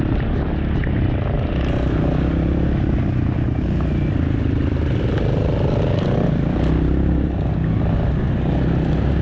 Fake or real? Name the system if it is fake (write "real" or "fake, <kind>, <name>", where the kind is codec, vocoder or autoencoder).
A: real